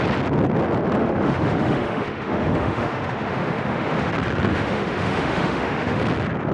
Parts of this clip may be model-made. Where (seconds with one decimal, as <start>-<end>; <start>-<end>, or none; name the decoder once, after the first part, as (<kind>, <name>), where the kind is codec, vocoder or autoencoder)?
1.0-4.1 (autoencoder, DAC-VAE); 4.5-6.0